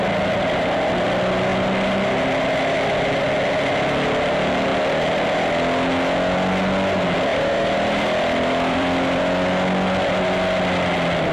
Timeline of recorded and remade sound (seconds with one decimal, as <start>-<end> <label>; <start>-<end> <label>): 0.0-7.3 recorded; 7.3-9.2 remade; 9.2-11.3 recorded

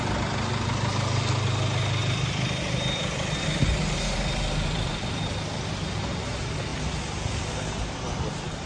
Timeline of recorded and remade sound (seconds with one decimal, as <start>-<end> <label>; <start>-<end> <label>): 0.0-2.0 recorded; 2.0-5.8 remade; 5.8-8.7 recorded